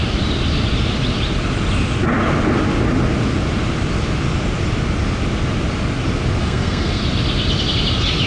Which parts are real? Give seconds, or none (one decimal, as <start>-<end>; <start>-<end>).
0.0-6.4; 7.0-8.3